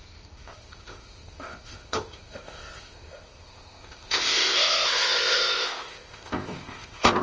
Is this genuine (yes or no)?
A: no